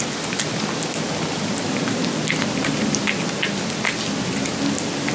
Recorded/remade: recorded